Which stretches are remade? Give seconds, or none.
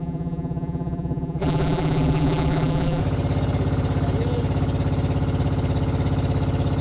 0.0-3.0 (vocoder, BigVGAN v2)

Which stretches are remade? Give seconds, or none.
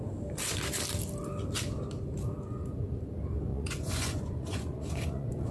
3.5-5.5 (vocoder, Vocos)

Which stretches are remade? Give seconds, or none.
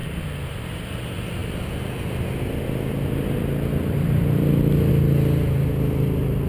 0.0-0.9 (vocoder, BigVGAN v2)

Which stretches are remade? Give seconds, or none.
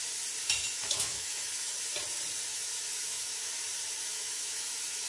0.6-1.7 (autoencoder, DAC-VAE); 2.5-3.5; 4.1-5.1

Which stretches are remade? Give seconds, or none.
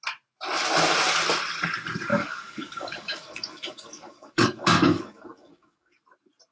2.1-6.0 (codec, DAC)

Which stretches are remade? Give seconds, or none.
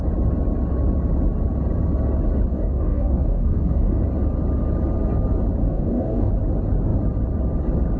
2.5-4.0 (codec, DAC); 5.6-6.3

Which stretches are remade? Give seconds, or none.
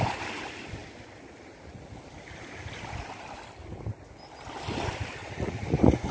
5.2-6.1 (vocoder, Vocos)